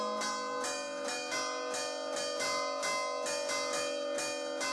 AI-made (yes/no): no